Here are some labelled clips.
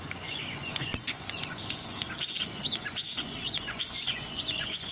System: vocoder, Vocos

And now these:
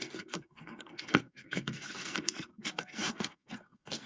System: codec, SNAC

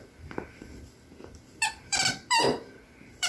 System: vocoder, BigVGAN v2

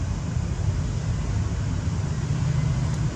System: none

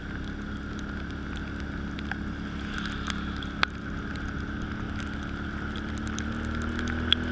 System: none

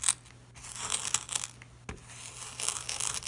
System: none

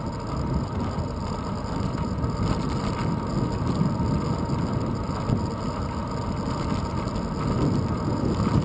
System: none